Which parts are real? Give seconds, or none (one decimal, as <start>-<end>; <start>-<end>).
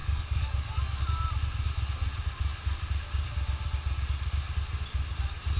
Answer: 1.0-5.6